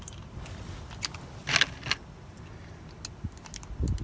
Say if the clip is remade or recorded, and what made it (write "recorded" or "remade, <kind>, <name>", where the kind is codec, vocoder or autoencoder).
recorded